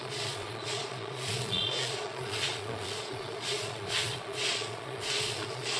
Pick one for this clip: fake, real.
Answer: fake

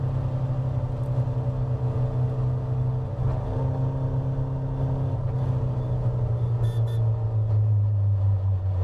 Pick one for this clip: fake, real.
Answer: real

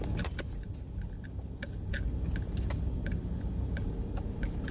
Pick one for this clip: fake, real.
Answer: real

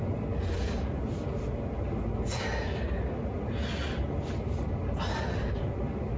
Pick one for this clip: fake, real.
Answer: real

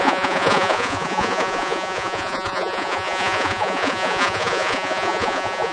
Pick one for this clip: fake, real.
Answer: fake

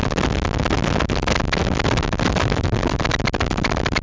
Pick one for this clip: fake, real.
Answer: real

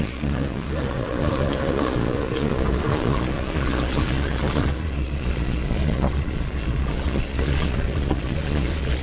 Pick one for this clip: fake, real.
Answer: fake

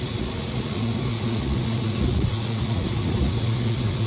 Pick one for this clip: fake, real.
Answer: fake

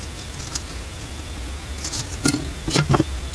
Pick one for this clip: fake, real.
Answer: real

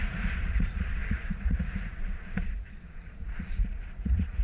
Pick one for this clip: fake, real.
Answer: fake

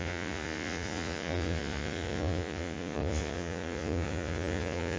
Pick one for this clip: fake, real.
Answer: fake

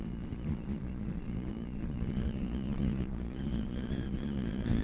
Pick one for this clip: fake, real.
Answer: fake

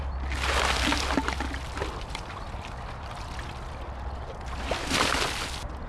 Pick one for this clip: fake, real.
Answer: real